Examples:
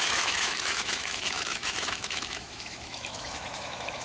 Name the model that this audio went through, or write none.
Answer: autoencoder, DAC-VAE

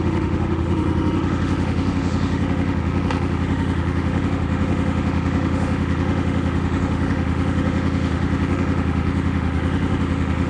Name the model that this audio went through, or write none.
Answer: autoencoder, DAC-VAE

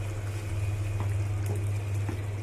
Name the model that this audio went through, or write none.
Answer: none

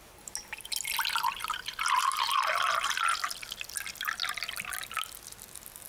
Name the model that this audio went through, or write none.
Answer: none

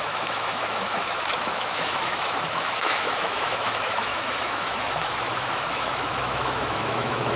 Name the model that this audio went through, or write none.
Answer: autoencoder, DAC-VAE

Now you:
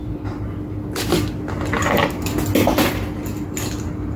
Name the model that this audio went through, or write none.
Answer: none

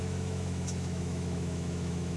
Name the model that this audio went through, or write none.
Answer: autoencoder, DAC-VAE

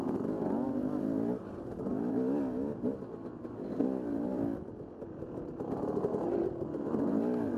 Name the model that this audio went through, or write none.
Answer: none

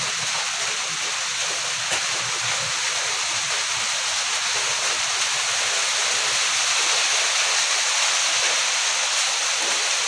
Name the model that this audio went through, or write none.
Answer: none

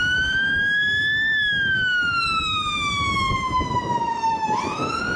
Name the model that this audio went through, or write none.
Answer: autoencoder, DAC-VAE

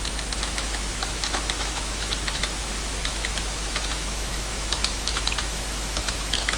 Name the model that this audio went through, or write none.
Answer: autoencoder, DAC-VAE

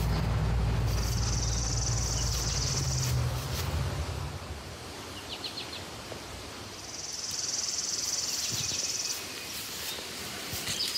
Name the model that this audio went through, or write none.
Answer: none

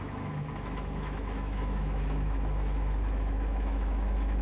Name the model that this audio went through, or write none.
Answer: autoencoder, DAC-VAE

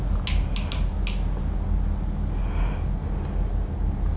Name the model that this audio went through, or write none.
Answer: none